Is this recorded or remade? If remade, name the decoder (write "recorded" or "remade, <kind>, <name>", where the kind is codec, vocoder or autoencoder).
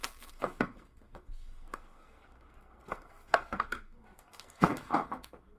remade, codec, SNAC